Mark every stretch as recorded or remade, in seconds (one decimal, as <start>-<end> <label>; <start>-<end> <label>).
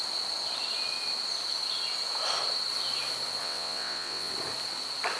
0.0-3.4 recorded; 3.4-4.3 remade; 4.3-5.2 recorded